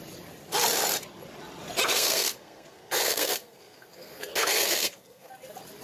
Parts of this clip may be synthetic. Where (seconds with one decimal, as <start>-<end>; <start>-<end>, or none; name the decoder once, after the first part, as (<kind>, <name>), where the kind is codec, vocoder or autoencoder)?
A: 1.9-5.3 (codec, SNAC)